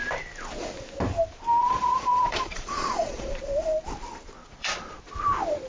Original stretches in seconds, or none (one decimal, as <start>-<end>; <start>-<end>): 0.0-1.6; 3.3-4.4; 5.0-5.7